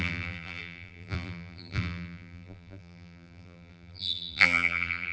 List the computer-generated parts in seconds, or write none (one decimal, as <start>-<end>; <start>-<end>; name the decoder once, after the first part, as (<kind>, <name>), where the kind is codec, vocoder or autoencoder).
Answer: 0.0-5.1 (vocoder, BigVGAN v2)